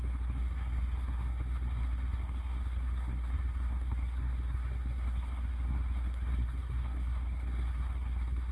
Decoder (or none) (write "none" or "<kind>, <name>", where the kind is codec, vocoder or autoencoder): codec, SNAC